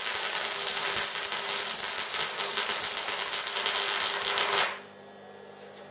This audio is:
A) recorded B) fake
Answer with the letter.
A